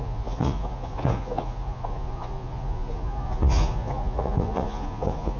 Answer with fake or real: fake